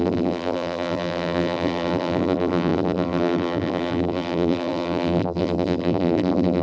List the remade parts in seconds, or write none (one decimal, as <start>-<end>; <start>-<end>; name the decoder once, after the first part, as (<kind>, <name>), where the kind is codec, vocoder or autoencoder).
0.0-6.6 (vocoder, BigVGAN v2)